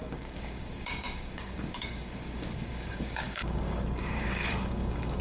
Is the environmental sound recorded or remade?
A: remade